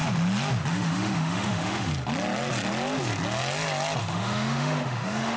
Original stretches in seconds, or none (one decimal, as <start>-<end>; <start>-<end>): 0.0-0.7; 1.9-4.0